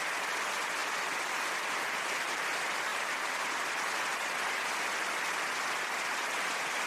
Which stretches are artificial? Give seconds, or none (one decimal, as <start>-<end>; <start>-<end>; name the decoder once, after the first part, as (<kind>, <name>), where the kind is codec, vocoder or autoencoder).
none